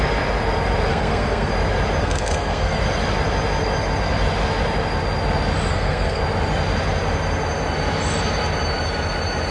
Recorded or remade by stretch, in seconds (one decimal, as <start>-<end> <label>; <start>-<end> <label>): 0.0-0.9 recorded; 0.9-1.5 remade; 1.5-2.0 recorded; 2.0-2.8 remade; 2.8-5.7 recorded; 5.7-6.2 remade; 6.2-9.5 recorded

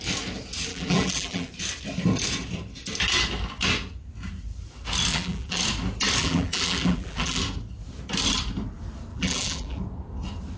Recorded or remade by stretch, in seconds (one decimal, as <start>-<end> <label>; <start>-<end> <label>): 0.0-0.7 recorded; 0.7-1.5 remade; 1.5-5.1 recorded; 5.1-5.6 remade; 5.6-6.2 recorded; 6.2-7.4 remade; 7.4-9.1 recorded; 9.1-9.8 remade; 9.8-10.6 recorded

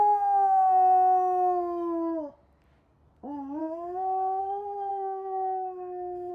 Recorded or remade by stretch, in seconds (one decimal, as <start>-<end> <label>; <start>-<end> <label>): 0.0-3.6 recorded; 3.6-4.4 remade; 4.4-4.9 recorded; 4.9-6.3 remade

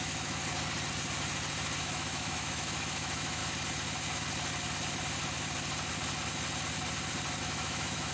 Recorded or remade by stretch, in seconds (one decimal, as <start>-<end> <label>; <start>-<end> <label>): 0.0-0.4 remade; 0.4-1.8 recorded; 1.8-3.4 remade; 3.4-7.4 recorded; 7.4-8.1 remade

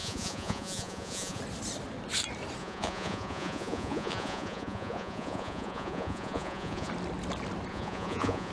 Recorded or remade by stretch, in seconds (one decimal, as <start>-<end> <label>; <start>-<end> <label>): 0.0-1.4 remade; 1.4-2.6 recorded; 2.6-6.9 remade; 6.9-7.7 recorded; 7.7-8.5 remade

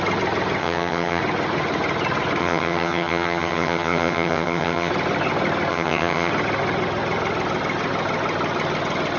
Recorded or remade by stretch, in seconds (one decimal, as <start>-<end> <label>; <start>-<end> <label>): 0.0-0.6 recorded; 0.6-1.2 remade; 1.2-2.4 recorded; 2.4-4.9 remade; 4.9-5.7 recorded; 5.7-6.3 remade; 6.3-9.2 recorded